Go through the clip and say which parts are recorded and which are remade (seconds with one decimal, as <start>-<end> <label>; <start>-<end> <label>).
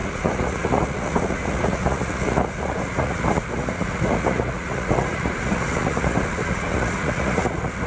0.0-7.9 remade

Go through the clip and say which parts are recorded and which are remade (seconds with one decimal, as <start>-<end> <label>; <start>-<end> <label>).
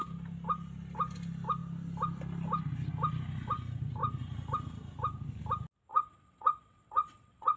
0.0-5.9 recorded; 5.9-7.6 remade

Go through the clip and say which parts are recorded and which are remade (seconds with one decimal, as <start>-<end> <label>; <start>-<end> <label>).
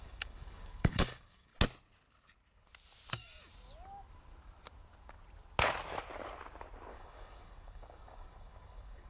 0.0-1.5 remade; 1.5-3.1 recorded; 3.1-3.5 remade; 3.5-6.9 recorded; 6.9-9.1 remade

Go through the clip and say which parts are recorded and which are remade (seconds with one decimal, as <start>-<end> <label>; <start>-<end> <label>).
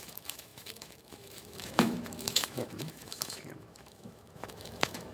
0.0-5.1 remade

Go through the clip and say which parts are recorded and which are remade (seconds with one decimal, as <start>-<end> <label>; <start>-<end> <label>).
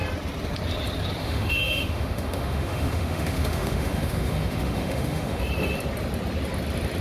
0.0-1.2 recorded; 1.2-5.4 remade; 5.4-7.0 recorded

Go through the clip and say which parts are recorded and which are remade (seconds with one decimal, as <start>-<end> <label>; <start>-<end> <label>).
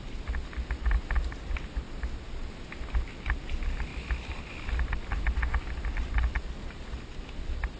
0.0-7.8 recorded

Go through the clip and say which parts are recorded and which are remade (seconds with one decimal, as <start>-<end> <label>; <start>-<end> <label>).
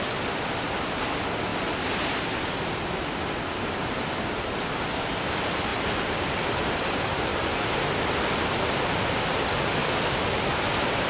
0.0-1.5 remade; 1.5-4.2 recorded; 4.2-5.7 remade; 5.7-6.2 recorded; 6.2-7.3 remade; 7.3-10.0 recorded; 10.0-11.1 remade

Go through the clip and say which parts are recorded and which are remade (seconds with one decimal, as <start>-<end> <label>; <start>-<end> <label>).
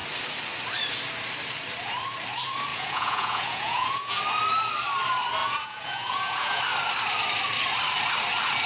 0.0-2.7 recorded; 2.7-4.2 remade; 4.2-5.4 recorded; 5.4-6.6 remade; 6.6-8.7 recorded